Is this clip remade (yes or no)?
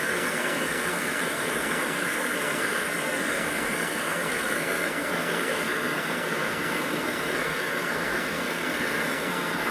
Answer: yes